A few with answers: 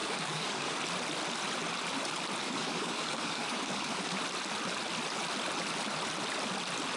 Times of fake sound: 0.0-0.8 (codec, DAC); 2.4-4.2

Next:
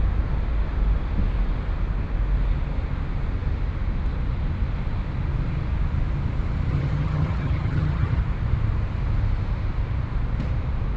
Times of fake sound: 6.7-8.2 (vocoder, HiFi-GAN)